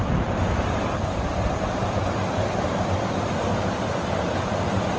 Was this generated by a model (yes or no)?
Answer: yes